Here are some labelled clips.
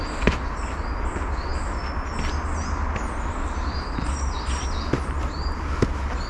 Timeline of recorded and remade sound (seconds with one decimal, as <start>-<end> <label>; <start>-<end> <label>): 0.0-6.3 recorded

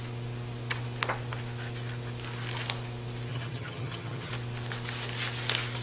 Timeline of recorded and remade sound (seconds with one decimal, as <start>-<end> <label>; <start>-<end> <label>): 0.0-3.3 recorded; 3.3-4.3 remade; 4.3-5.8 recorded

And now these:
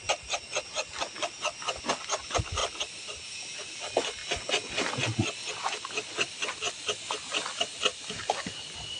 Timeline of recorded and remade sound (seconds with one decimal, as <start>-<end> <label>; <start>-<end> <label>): 0.0-9.0 recorded